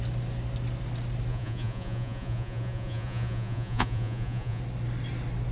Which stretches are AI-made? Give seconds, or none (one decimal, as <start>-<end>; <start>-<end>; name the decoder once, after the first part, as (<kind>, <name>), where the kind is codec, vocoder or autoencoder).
1.3-4.6 (vocoder, Vocos)